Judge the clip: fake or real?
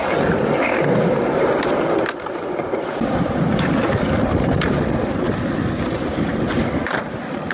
real